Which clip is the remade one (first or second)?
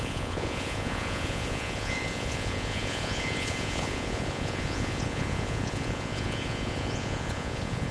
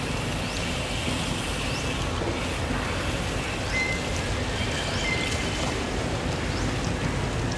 first